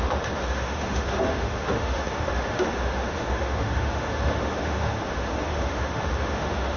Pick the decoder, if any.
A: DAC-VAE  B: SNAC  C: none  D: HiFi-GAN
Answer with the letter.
A